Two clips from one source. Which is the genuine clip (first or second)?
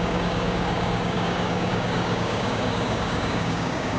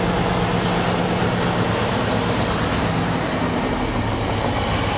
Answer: second